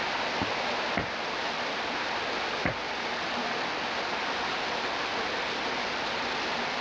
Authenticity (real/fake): real